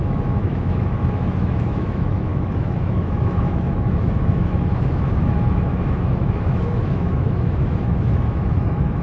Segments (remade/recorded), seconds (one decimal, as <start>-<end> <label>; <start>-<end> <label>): 0.0-9.0 remade